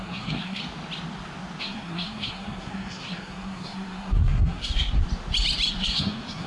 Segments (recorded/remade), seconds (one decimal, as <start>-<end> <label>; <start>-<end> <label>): 0.0-0.6 remade; 0.6-1.6 recorded; 1.6-5.0 remade; 5.0-5.7 recorded; 5.7-6.5 remade